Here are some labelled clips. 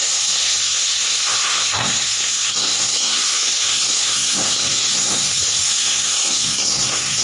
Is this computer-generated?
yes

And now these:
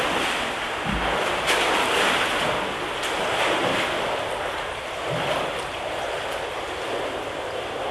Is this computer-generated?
no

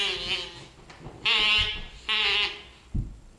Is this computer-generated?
no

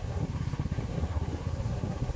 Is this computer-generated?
yes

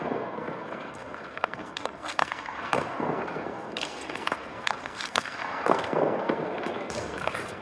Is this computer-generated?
yes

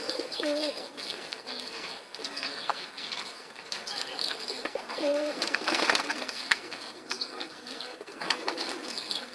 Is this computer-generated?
yes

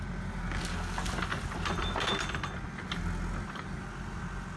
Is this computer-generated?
no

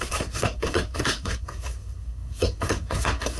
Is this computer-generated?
yes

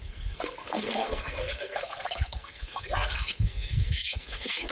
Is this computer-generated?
yes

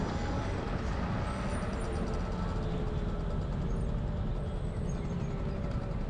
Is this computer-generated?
no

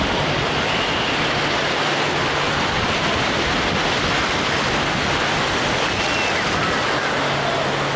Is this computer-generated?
no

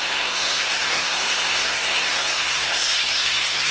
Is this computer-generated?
yes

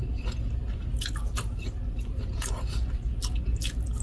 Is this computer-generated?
no